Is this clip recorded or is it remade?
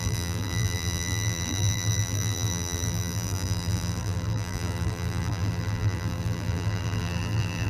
remade